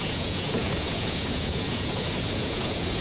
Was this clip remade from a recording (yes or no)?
yes